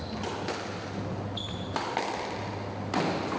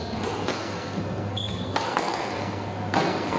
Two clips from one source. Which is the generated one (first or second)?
second